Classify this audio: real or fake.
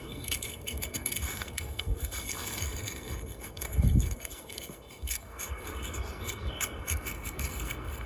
fake